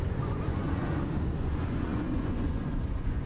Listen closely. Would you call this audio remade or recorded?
remade